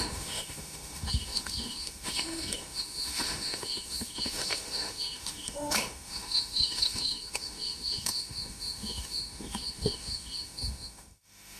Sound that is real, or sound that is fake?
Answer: fake